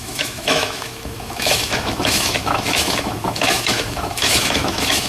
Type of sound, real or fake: fake